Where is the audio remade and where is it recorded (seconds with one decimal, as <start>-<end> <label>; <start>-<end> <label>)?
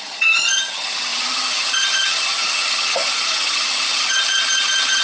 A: 0.0-5.0 remade